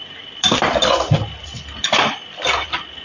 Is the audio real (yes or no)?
no